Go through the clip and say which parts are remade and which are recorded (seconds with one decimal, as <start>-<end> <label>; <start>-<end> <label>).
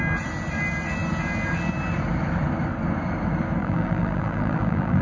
0.0-3.6 recorded; 3.6-5.0 remade